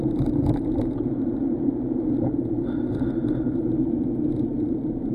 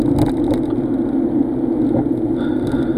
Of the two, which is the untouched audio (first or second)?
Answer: second